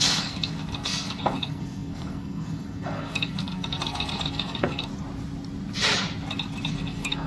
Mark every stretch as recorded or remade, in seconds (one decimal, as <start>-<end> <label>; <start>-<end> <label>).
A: 0.0-4.9 remade; 4.9-6.7 recorded; 6.7-7.3 remade